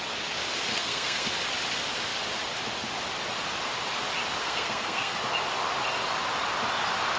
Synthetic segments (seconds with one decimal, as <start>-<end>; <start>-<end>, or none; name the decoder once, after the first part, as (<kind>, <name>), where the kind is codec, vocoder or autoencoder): 0.7-1.3 (codec, SNAC); 4.4-5.2